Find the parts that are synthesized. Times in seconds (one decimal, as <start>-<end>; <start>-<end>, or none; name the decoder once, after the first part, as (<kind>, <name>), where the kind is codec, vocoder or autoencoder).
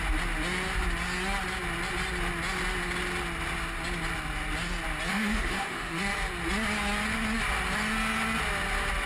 5.1-6.0 (autoencoder, DAC-VAE)